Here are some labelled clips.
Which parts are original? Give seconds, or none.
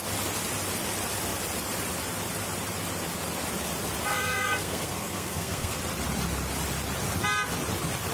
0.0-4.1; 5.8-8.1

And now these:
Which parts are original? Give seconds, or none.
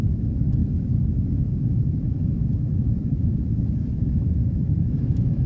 none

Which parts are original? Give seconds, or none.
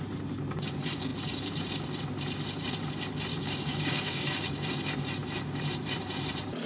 0.0-3.3; 4.8-6.7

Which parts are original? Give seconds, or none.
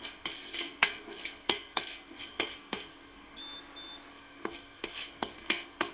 3.4-4.1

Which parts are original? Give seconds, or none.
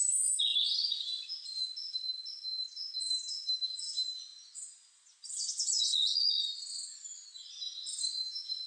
0.0-4.3; 6.4-8.7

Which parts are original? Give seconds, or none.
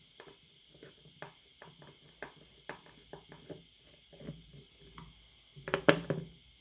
0.0-5.5; 6.1-6.6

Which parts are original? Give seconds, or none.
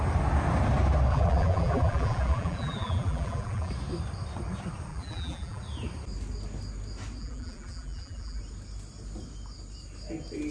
0.0-1.1; 3.7-4.9; 5.6-7.2; 8.4-10.5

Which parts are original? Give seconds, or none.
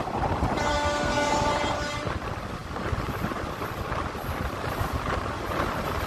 0.0-0.7; 1.3-6.1